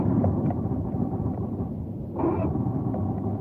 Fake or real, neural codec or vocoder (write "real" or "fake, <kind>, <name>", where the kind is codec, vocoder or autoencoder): real